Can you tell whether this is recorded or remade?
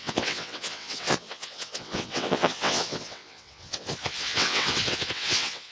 remade